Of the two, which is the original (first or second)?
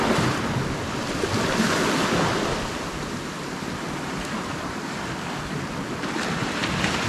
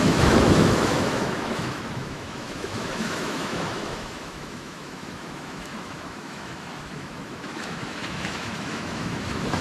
first